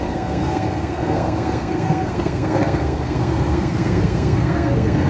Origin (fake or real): fake